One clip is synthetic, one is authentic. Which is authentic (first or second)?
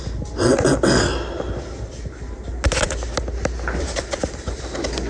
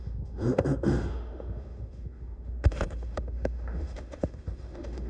first